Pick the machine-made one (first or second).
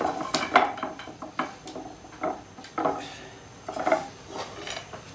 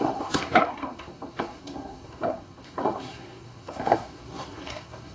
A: second